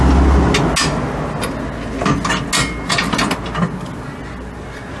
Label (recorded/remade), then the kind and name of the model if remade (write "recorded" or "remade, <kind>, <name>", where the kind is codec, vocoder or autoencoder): recorded